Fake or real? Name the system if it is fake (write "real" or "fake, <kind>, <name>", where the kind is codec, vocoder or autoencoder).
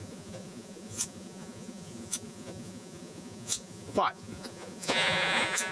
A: fake, vocoder, Vocos